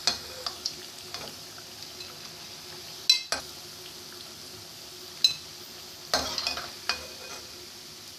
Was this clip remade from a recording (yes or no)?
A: no